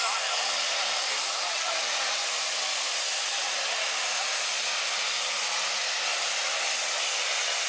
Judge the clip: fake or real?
real